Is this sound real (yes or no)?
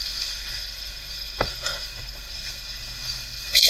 no